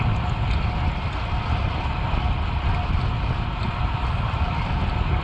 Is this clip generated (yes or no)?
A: no